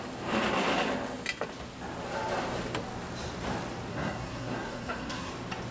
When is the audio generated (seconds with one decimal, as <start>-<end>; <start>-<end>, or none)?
3.9-5.3